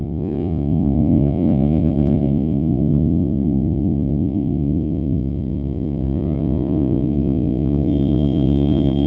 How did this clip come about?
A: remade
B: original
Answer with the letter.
A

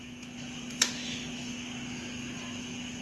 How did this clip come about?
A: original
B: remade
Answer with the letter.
A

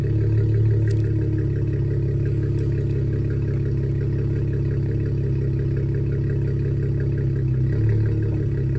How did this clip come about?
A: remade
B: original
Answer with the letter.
B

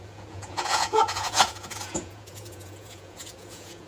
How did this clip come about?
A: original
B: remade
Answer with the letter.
B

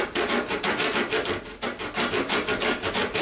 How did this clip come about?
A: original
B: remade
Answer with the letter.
A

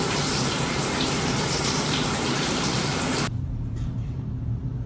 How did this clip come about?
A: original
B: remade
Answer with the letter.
B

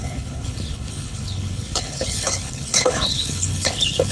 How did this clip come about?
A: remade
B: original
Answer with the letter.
A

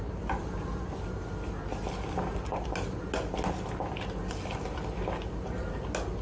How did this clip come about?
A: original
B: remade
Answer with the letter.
A